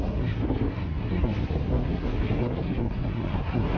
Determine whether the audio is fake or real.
fake